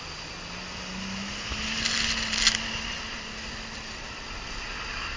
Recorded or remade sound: recorded